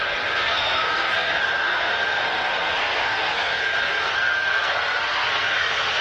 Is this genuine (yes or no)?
no